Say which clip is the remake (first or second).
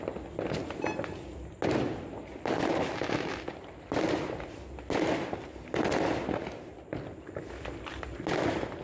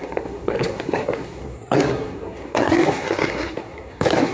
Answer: second